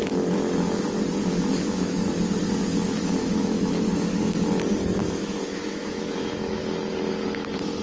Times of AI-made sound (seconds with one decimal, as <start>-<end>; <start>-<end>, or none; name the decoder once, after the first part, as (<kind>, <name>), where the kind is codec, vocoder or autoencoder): 1.2-2.1 (autoencoder, DAC-VAE); 3.2-3.8; 5.0-6.6